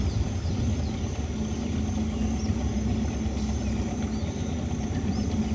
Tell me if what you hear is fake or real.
real